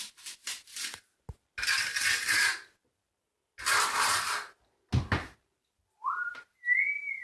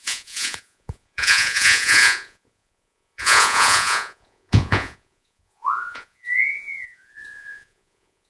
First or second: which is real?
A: first